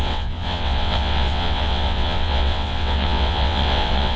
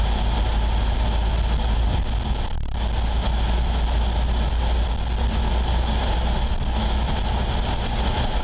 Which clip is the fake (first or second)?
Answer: first